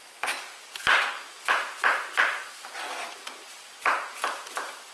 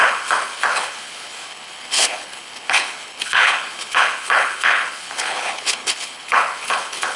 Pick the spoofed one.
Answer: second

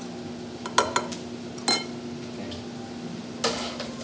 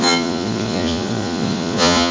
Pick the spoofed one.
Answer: second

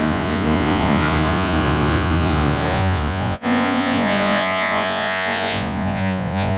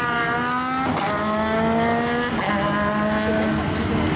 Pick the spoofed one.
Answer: first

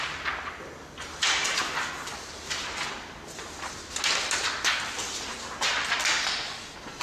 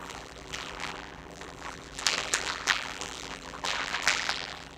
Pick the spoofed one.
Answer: second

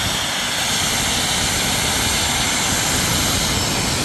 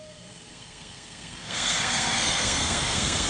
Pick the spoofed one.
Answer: second